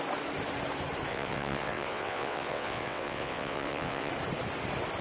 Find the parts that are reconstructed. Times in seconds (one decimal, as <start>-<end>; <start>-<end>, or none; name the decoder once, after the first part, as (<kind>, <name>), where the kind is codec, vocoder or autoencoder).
1.1-4.1 (vocoder, WaveNeXt)